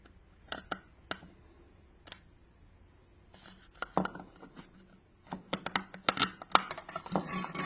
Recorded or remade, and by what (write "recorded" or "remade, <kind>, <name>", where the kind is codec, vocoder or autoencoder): recorded